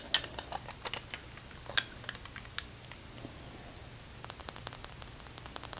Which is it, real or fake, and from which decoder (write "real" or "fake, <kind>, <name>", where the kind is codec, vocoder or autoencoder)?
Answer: real